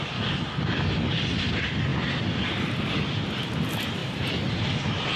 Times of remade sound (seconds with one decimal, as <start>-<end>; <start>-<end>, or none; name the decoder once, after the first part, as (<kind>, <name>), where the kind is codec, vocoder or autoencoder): none